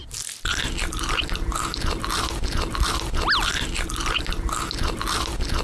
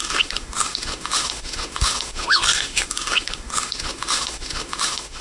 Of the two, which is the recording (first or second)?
first